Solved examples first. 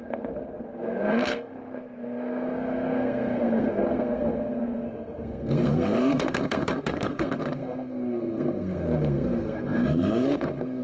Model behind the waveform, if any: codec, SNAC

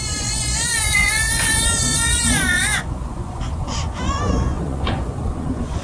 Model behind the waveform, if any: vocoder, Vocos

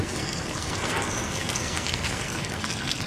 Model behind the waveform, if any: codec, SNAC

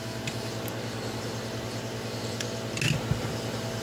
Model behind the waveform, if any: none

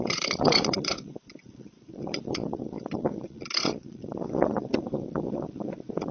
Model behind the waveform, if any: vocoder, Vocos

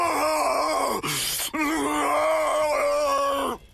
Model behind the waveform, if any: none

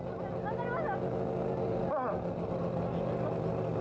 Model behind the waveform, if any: none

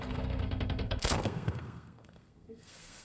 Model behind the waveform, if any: codec, SNAC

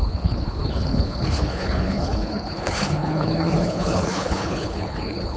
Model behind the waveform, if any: codec, HILCodec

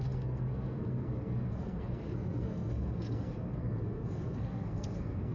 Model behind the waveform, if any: codec, SNAC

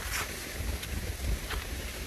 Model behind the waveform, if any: vocoder, BigVGAN v2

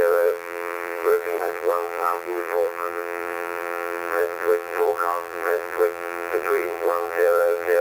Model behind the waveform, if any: vocoder, BigVGAN v2